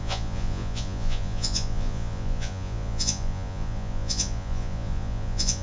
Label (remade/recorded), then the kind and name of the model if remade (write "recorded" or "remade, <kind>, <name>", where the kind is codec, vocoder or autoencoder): remade, vocoder, Vocos